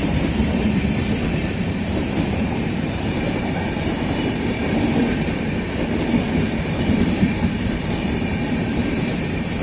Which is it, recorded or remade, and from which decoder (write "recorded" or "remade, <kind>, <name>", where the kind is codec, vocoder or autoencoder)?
remade, vocoder, BigVGAN v2